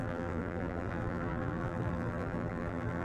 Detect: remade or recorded remade